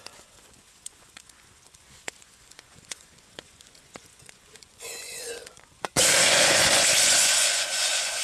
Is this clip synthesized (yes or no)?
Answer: yes